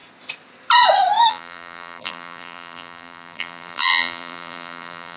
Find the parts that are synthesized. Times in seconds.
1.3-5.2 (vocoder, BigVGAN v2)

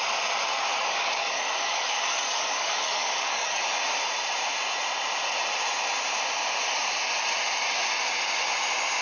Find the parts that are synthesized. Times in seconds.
0.5-3.6 (codec, DAC)